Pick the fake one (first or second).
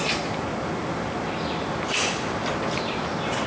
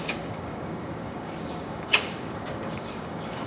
second